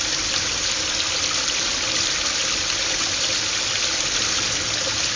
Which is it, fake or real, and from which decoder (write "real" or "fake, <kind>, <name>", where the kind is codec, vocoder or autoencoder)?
real